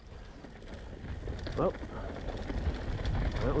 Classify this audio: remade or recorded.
recorded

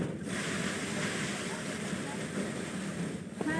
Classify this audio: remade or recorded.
recorded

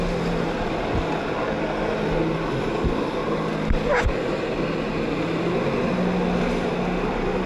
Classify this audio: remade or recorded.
recorded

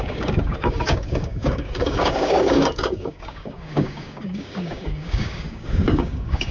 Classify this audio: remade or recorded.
remade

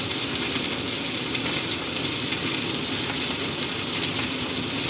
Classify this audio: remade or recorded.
recorded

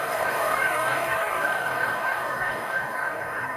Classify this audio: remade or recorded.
remade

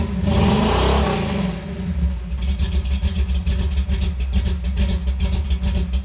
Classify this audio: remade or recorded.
recorded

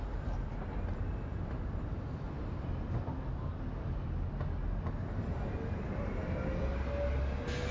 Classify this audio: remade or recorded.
recorded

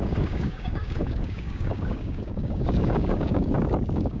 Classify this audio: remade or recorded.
remade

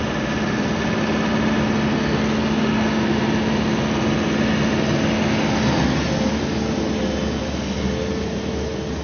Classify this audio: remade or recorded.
recorded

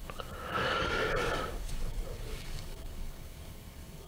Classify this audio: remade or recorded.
remade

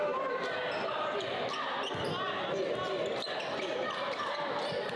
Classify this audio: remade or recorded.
recorded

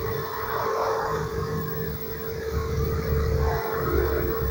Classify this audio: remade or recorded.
remade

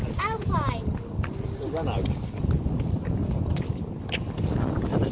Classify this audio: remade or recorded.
recorded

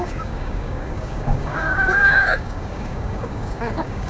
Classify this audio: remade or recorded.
remade